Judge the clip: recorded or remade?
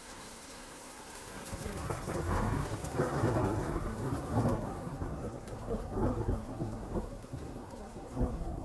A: remade